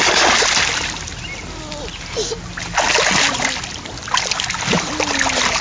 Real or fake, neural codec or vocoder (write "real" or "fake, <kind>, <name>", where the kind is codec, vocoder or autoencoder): real